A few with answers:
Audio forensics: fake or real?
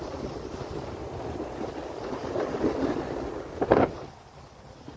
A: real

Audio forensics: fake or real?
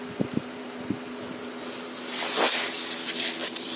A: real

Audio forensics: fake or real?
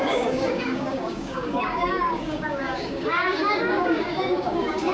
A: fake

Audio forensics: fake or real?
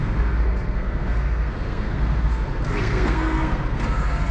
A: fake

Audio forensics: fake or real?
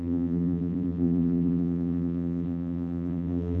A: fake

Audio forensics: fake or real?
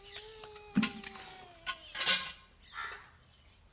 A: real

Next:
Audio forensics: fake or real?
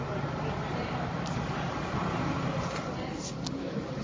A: real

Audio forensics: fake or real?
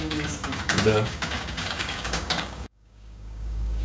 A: fake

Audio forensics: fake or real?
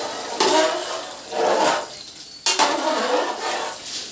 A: real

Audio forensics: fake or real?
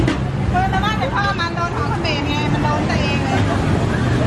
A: real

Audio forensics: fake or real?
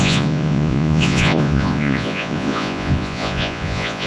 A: fake